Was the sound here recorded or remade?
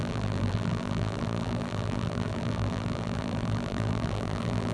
remade